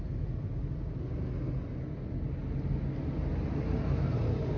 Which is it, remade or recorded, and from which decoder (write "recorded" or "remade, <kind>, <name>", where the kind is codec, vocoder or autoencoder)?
recorded